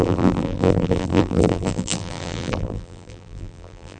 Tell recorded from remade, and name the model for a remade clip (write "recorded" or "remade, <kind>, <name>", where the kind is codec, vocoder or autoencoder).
remade, vocoder, BigVGAN v2